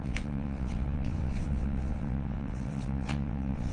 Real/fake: fake